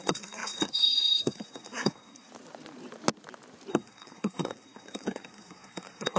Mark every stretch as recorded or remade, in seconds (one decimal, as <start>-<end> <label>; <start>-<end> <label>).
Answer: 0.0-2.3 remade; 2.3-3.7 recorded; 3.7-6.2 remade